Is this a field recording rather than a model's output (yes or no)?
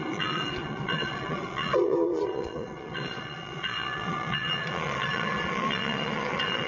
no